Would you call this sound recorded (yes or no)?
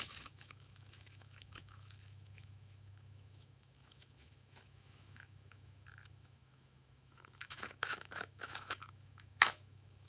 no